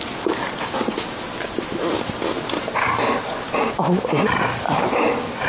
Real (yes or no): yes